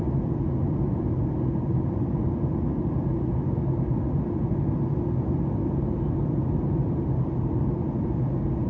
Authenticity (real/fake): real